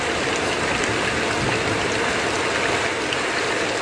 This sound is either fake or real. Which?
real